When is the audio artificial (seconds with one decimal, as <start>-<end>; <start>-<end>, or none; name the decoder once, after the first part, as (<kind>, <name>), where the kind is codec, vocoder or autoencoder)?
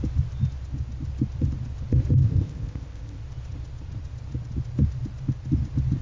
2.2-3.2 (codec, ZipCodec)